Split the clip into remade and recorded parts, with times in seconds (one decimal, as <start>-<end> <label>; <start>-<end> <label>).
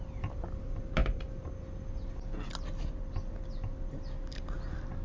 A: 0.0-5.0 recorded